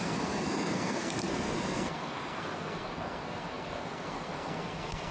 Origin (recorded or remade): remade